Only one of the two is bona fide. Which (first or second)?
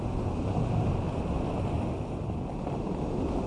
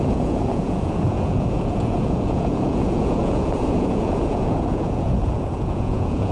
first